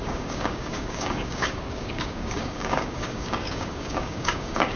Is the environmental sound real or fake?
fake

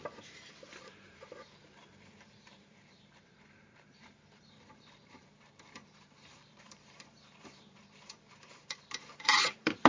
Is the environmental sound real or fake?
fake